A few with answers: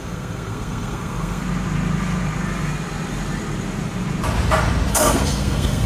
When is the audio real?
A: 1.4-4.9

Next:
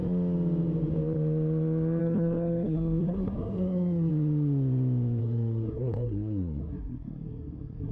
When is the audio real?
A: 0.0-2.0; 4.1-5.2

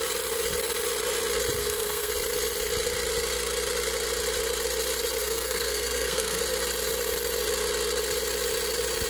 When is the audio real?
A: 0.0-1.6; 2.1-5.2; 6.4-9.1